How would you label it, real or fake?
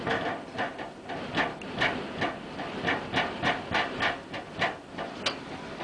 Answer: real